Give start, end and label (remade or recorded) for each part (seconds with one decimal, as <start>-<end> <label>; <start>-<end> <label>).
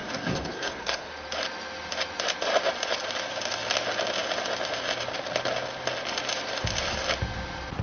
0.0-1.1 remade; 1.1-7.8 recorded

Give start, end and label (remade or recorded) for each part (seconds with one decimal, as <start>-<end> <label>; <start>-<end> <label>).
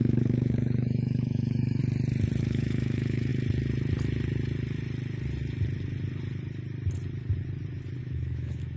0.0-1.8 remade; 1.8-2.4 recorded; 2.4-3.3 remade; 3.3-8.0 recorded; 8.0-8.8 remade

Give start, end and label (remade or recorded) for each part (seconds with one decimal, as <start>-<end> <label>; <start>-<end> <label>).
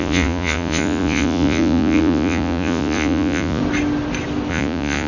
0.0-3.6 remade; 3.6-4.5 recorded; 4.5-5.1 remade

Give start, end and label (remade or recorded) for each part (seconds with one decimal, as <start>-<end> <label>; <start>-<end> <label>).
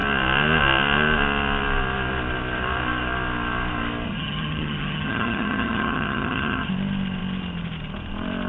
0.0-4.1 recorded; 4.1-6.7 remade; 6.7-8.5 recorded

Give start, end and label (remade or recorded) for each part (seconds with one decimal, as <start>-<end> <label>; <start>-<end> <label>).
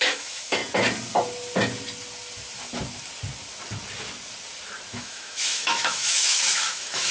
0.0-0.6 remade; 0.6-4.9 recorded; 4.9-7.1 remade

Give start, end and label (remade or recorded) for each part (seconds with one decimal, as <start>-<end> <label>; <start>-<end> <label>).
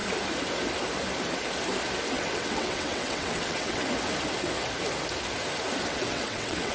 0.0-2.1 recorded; 2.1-3.8 remade; 3.8-5.9 recorded; 5.9-6.7 remade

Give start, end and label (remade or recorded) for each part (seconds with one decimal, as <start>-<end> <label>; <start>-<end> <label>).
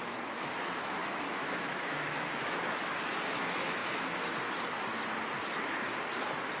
0.0-3.8 remade; 3.8-6.6 recorded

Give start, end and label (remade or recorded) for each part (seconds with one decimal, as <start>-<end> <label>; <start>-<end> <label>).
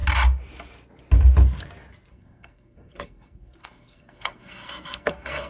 0.0-2.1 recorded; 2.1-5.5 remade